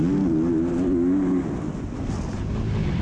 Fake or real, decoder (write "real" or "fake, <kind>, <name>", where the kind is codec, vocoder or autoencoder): real